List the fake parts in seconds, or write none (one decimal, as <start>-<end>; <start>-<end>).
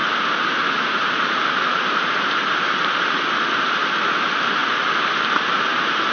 0.0-3.2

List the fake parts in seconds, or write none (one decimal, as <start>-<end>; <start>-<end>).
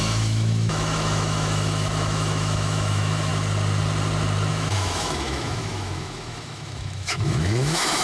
0.0-3.3; 4.5-8.0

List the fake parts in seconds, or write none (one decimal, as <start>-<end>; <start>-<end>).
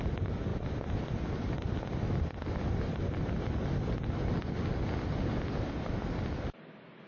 none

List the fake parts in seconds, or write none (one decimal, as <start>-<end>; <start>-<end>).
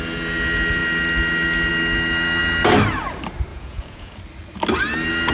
3.5-4.2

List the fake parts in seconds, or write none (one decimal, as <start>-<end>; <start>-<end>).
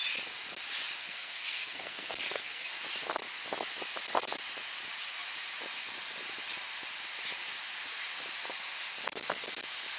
1.0-2.7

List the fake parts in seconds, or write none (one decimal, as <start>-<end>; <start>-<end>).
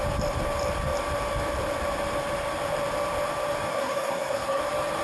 3.7-4.6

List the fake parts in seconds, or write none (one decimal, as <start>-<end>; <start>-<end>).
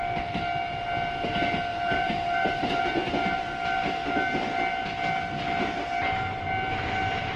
1.7-2.8